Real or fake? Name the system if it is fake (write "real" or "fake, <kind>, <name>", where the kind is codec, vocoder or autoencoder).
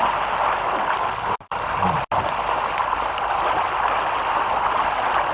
real